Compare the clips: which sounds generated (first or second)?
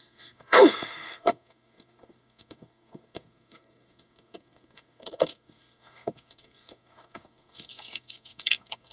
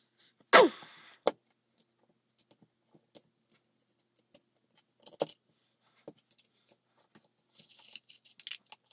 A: first